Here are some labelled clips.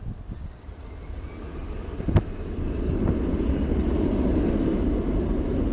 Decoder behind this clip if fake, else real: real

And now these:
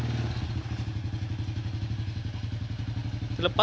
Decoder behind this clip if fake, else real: real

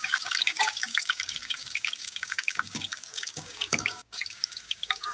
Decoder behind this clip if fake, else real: fake, codec, DAC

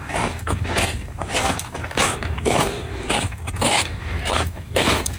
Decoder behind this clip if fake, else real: fake, codec, DAC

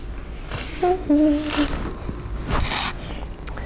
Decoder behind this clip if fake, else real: real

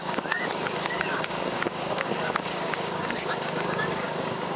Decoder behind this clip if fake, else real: fake, codec, DAC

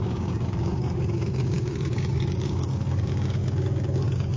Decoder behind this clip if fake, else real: fake, codec, DAC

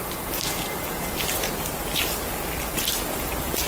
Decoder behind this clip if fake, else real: real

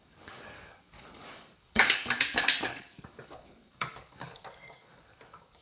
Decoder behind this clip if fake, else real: fake, codec, DAC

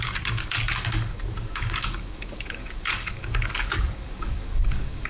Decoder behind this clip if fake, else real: fake, codec, DAC